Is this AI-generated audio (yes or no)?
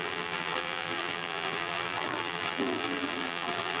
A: yes